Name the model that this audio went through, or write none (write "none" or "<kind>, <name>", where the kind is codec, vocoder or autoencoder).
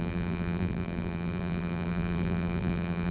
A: vocoder, BigVGAN v2